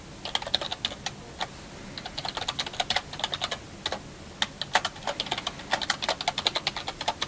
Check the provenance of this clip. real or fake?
real